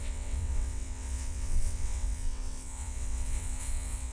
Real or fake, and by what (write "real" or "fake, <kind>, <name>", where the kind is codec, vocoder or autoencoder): fake, vocoder, WaveNeXt